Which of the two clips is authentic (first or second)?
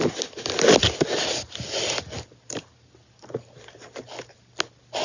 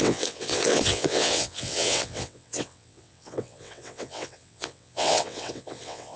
first